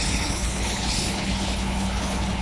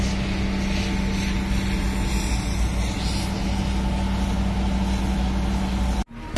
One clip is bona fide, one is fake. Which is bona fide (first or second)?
second